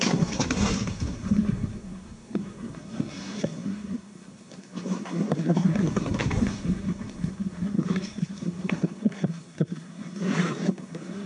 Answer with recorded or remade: remade